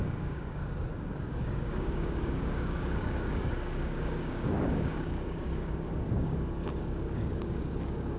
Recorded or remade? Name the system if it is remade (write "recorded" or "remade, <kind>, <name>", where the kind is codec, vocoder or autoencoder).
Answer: remade, codec, DAC